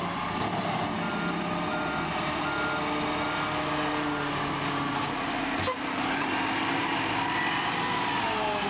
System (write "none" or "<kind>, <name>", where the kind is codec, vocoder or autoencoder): none